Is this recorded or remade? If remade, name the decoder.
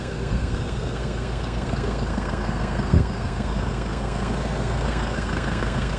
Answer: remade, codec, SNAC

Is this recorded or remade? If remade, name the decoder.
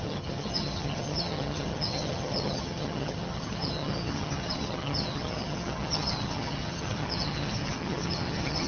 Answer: remade, vocoder, HiFi-GAN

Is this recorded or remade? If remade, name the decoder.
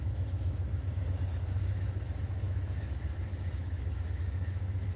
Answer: remade, autoencoder, DAC-VAE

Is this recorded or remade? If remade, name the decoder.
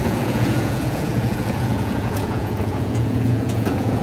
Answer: remade, vocoder, Vocos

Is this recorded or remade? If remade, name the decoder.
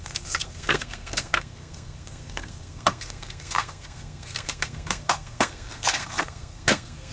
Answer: remade, codec, SNAC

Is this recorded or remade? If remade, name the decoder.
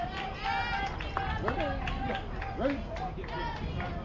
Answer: recorded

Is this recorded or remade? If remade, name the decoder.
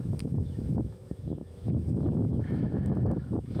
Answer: remade, autoencoder, DAC-VAE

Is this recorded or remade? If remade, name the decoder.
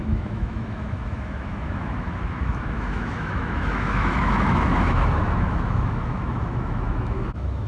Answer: remade, autoencoder, DAC-VAE